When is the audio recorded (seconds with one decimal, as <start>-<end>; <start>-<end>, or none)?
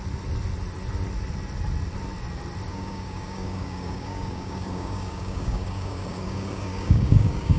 0.0-2.7